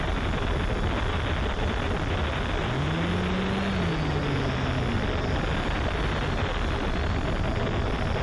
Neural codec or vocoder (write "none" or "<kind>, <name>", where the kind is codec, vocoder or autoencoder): none